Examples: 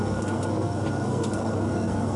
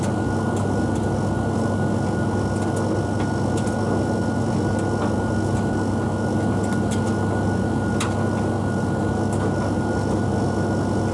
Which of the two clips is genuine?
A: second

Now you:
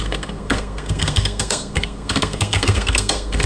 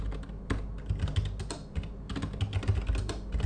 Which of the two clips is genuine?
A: second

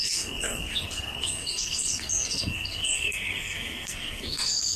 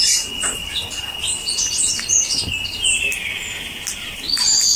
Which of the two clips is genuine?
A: second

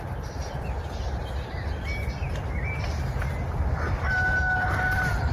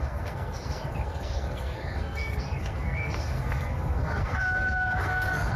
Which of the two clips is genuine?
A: first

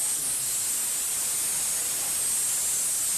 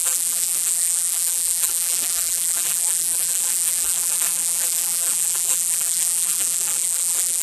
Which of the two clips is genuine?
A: first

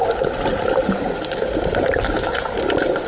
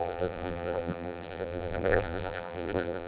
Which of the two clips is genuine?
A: first